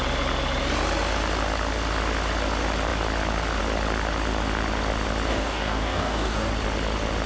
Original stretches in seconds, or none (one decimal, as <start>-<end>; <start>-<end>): 0.0-5.3; 6.5-7.3